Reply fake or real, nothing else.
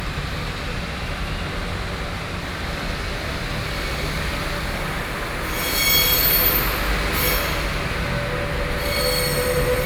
real